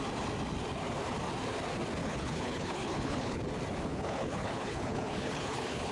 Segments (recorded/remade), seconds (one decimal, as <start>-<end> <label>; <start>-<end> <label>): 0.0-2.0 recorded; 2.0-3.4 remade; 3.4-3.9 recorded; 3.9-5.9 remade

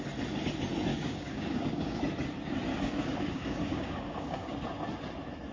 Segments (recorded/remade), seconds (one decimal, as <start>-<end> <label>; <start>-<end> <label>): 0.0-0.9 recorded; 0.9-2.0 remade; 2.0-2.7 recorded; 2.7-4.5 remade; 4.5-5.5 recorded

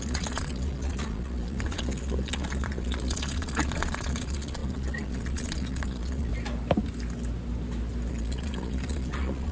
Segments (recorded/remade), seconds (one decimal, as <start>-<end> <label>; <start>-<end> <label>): 0.0-6.3 remade; 6.3-8.1 recorded; 8.1-9.5 remade

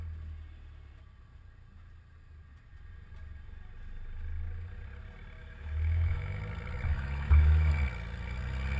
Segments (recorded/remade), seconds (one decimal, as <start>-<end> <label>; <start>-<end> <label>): 0.0-5.4 recorded; 5.4-6.4 remade; 6.4-6.9 recorded; 6.9-7.7 remade; 7.7-8.8 recorded

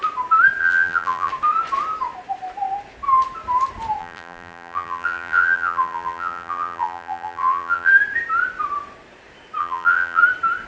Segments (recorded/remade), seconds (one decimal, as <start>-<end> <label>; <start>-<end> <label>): 0.0-0.6 recorded; 0.6-1.3 remade; 1.3-4.0 recorded; 4.0-7.9 remade; 7.9-9.6 recorded; 9.6-10.2 remade; 10.2-10.7 recorded

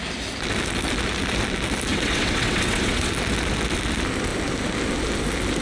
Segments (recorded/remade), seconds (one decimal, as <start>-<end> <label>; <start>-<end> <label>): 0.0-1.9 recorded; 1.9-3.1 remade; 3.1-5.6 recorded

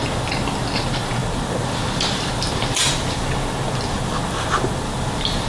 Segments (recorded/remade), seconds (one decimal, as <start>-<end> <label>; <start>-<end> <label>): 0.0-5.5 recorded